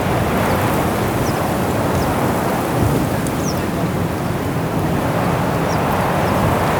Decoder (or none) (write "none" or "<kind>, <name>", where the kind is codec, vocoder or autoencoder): none